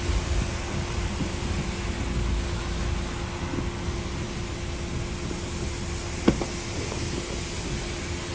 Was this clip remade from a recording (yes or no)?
no